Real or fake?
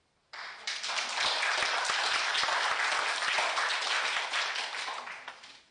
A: real